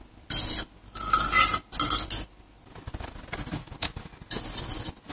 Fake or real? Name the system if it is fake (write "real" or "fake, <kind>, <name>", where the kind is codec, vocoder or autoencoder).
real